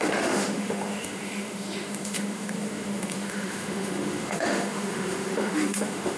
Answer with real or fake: fake